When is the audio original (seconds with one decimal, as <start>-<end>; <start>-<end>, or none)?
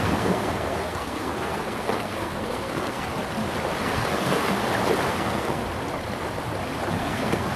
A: 3.2-3.8; 4.6-5.1; 5.6-6.9